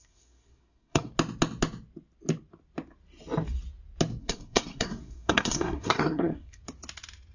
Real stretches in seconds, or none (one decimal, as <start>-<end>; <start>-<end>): 1.1-4.2; 6.6-7.3